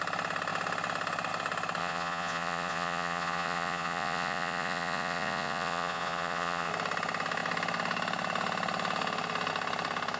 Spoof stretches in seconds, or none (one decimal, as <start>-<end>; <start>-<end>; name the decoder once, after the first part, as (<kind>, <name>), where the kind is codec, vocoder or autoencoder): 1.8-6.7 (vocoder, Vocos)

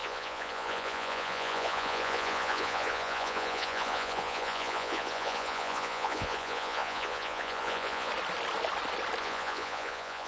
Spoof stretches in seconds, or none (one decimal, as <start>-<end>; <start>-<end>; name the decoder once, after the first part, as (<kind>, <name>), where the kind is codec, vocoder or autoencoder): 0.0-8.1 (vocoder, Vocos); 9.2-10.3

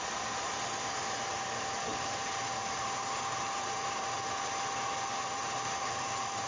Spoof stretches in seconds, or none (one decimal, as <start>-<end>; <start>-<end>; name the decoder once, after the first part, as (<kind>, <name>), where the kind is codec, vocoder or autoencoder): 0.0-6.5 (vocoder, BigVGAN v2)

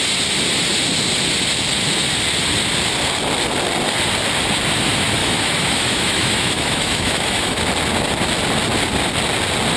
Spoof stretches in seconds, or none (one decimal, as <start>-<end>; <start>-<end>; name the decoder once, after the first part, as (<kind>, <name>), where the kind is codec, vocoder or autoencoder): 5.2-7.6 (autoencoder, DAC-VAE)

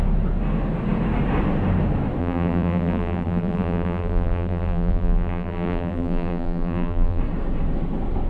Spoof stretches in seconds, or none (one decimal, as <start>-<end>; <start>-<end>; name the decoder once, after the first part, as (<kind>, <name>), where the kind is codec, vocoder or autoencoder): 2.2-7.2 (vocoder, BigVGAN v2)

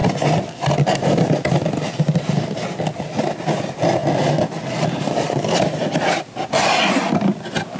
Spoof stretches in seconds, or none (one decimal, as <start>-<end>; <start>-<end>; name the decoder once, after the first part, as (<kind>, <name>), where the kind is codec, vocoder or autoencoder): none

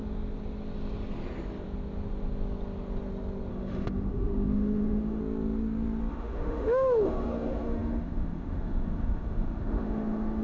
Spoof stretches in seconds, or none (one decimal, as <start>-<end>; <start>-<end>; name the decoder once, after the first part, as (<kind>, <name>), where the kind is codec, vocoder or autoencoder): 3.5-5.2 (autoencoder, DAC-VAE); 6.1-10.4

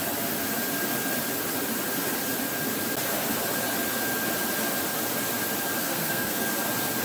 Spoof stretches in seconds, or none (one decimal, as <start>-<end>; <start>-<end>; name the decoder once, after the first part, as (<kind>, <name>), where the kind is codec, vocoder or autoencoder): 5.8-6.5 (codec, SNAC)